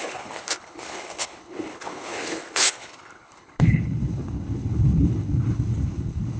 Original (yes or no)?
no